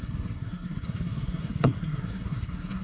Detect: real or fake fake